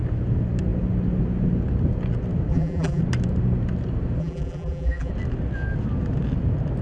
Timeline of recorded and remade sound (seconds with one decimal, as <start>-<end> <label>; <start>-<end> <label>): 0.0-2.5 recorded; 2.5-3.0 remade; 3.0-4.2 recorded; 4.2-5.1 remade; 5.1-6.8 recorded